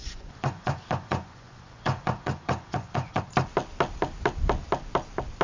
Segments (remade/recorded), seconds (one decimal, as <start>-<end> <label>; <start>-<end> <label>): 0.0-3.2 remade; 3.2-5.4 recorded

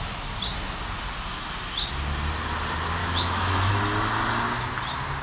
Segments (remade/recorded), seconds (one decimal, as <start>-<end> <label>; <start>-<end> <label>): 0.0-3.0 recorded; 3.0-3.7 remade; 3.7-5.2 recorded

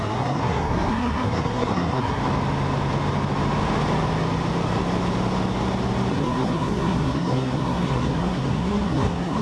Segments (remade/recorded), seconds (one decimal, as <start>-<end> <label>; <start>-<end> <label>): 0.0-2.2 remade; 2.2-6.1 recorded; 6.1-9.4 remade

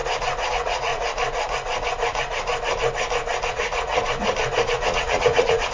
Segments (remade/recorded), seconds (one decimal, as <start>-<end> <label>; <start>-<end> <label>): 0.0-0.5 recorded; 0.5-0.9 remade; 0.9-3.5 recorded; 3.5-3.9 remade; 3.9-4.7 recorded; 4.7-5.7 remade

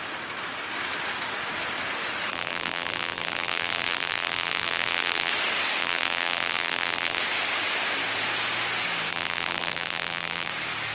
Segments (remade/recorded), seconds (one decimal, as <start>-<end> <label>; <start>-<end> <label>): 0.0-2.3 recorded; 2.3-5.3 remade; 5.3-5.8 recorded; 5.8-7.2 remade; 7.2-9.1 recorded; 9.1-10.5 remade; 10.5-10.9 recorded

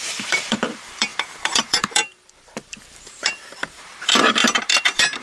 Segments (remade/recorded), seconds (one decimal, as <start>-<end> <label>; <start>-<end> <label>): 0.0-5.2 remade